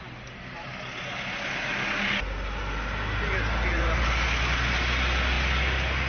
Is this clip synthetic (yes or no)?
no